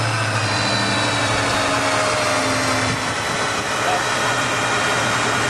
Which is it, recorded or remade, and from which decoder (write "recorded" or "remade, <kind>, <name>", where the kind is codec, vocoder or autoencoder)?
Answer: recorded